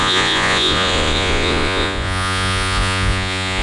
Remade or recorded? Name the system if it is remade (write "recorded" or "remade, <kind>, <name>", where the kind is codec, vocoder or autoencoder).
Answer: remade, vocoder, Vocos